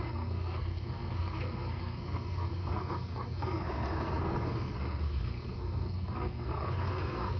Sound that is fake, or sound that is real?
fake